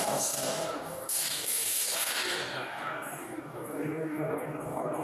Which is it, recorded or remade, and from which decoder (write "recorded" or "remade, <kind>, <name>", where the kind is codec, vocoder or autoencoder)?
remade, codec, DAC